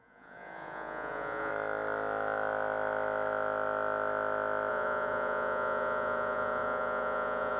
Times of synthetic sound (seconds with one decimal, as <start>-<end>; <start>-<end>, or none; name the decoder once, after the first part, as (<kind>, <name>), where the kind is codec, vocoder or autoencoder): 0.0-1.5 (vocoder, Vocos); 4.7-7.6